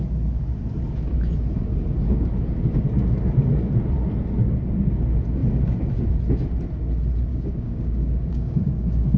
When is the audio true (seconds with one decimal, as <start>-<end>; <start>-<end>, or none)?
0.0-7.3